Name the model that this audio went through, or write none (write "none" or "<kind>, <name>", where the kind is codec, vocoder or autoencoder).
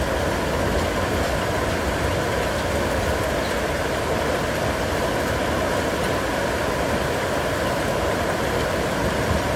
none